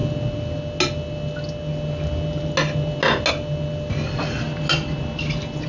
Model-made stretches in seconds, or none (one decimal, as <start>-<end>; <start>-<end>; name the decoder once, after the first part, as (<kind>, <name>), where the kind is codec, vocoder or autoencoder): none